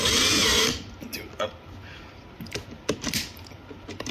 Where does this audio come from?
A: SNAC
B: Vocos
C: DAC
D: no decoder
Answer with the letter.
D